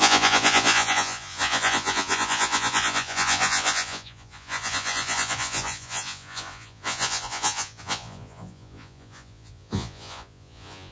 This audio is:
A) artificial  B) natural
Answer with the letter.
A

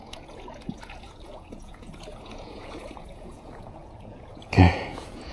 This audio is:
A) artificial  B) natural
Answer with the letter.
A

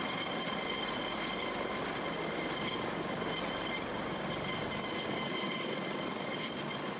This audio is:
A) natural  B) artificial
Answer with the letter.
A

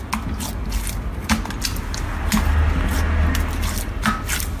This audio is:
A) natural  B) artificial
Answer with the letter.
A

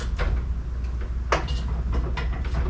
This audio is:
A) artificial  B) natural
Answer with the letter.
B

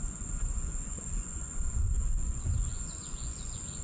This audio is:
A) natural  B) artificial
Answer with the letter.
B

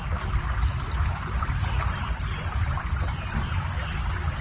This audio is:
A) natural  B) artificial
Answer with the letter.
A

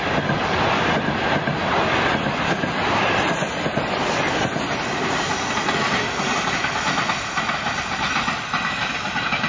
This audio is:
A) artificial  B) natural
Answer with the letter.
B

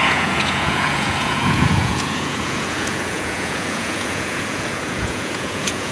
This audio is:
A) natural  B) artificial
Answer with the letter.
B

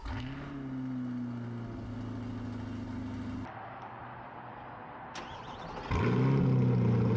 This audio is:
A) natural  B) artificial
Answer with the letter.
A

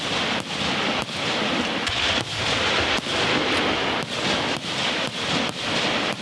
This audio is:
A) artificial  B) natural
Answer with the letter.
B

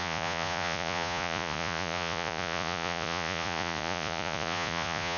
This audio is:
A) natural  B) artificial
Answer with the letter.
B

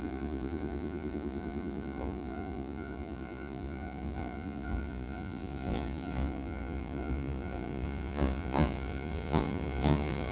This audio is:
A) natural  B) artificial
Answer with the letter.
B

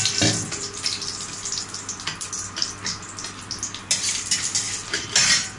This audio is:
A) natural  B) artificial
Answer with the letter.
A